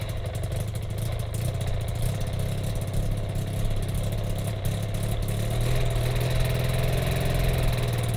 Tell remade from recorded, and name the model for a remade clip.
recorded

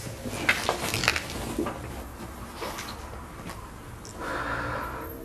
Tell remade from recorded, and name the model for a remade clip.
recorded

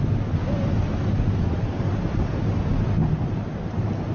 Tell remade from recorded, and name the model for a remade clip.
recorded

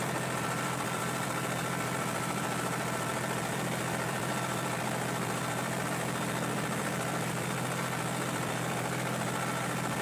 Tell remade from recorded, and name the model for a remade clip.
remade, vocoder, BigVGAN v2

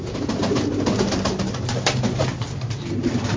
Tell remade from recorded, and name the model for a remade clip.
recorded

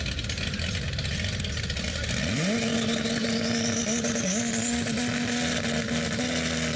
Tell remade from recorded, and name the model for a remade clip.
recorded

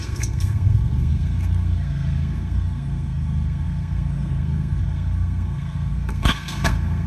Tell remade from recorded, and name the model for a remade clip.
remade, codec, SNAC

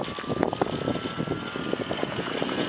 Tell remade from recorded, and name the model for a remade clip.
recorded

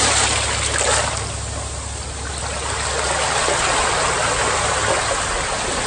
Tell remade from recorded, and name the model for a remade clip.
recorded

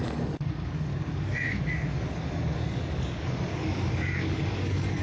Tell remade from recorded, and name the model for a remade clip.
remade, codec, DAC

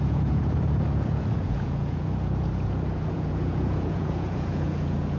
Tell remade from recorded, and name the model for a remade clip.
remade, vocoder, Vocos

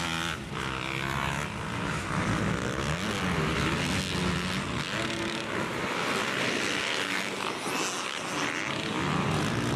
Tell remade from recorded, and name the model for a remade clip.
recorded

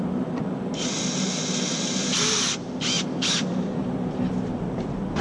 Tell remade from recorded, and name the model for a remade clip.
remade, vocoder, BigVGAN v2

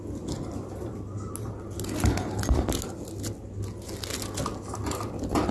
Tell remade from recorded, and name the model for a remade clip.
recorded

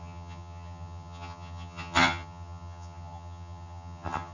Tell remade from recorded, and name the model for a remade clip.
remade, vocoder, HiFi-GAN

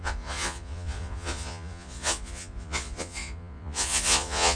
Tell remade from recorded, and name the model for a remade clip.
remade, vocoder, Vocos